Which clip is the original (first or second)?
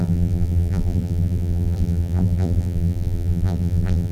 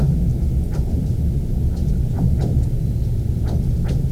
second